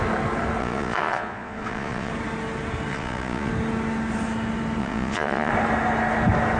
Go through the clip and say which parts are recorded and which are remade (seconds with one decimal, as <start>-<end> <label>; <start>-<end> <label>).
0.0-0.6 recorded; 0.6-2.1 remade; 2.1-2.9 recorded; 2.9-3.5 remade; 3.5-4.8 recorded; 4.8-5.5 remade; 5.5-6.6 recorded